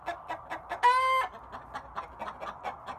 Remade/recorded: recorded